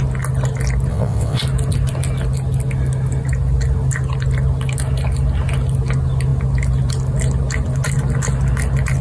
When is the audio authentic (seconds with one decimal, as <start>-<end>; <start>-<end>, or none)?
0.0-0.9; 1.4-9.0